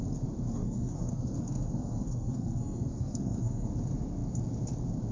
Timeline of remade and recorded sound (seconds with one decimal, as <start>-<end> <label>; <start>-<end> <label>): 0.0-0.6 recorded; 0.6-3.7 remade; 3.7-5.1 recorded